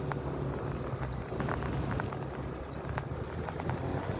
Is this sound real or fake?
real